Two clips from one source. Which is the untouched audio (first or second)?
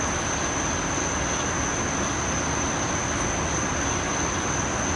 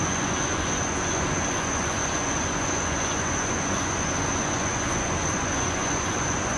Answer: first